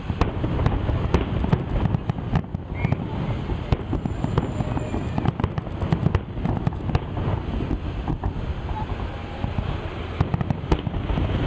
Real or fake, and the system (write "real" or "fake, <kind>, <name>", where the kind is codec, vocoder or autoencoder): real